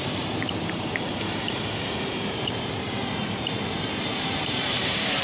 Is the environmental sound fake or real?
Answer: fake